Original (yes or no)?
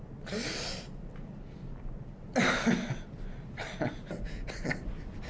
yes